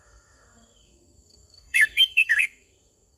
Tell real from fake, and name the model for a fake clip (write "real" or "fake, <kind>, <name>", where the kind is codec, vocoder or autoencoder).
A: fake, codec, SNAC